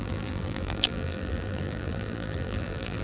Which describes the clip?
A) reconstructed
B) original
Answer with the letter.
A